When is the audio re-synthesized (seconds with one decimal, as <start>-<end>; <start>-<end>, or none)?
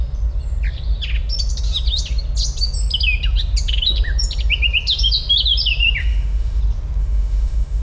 6.0-6.6; 7.0-7.8